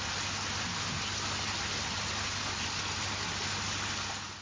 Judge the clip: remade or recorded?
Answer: recorded